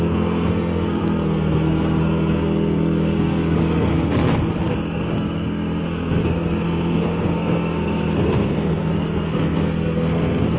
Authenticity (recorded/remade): remade